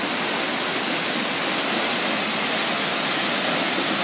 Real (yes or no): yes